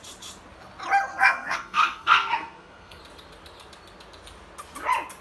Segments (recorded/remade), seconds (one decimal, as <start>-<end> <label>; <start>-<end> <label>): 0.0-1.1 recorded; 1.1-3.0 remade; 3.0-5.2 recorded